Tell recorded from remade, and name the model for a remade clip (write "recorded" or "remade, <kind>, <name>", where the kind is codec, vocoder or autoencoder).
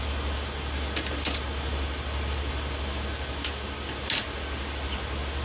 recorded